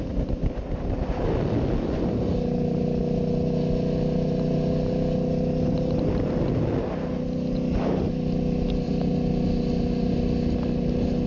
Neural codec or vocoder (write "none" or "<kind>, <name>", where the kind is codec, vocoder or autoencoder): none